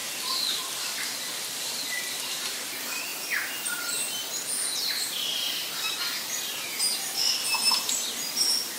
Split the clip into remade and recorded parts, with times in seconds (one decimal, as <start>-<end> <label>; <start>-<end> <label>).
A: 0.0-0.8 recorded; 0.8-8.8 remade